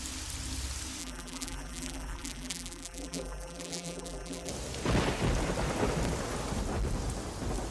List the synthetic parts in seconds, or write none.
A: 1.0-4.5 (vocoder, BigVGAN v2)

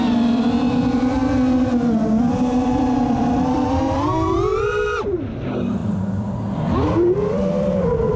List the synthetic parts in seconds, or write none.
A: 0.0-1.2 (vocoder, BigVGAN v2); 2.2-4.5; 5.2-8.2

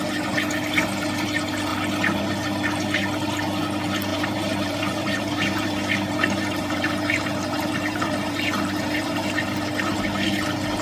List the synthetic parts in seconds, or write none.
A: 4.1-9.3 (vocoder, BigVGAN v2)

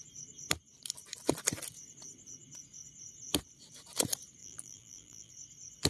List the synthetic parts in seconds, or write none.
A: 4.4-5.3 (vocoder, BigVGAN v2)

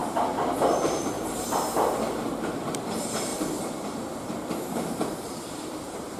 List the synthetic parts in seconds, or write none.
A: 0.9-3.3 (vocoder, BigVGAN v2); 4.5-6.2

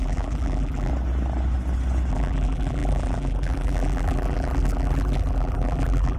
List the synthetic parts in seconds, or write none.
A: 0.0-0.9 (vocoder, BigVGAN v2); 2.1-6.2